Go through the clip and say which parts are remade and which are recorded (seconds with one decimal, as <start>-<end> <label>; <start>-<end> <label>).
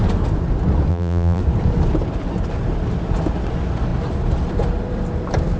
0.0-0.9 recorded; 0.9-1.4 remade; 1.4-5.6 recorded